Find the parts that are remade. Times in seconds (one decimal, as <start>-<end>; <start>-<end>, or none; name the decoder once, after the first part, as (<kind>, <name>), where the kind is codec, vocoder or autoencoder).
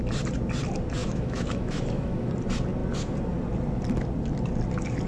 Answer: 1.0-2.3 (autoencoder, DAC-VAE)